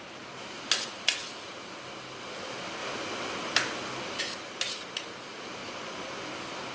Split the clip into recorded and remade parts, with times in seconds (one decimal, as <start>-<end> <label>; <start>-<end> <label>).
0.0-5.6 recorded; 5.6-6.1 remade; 6.1-6.7 recorded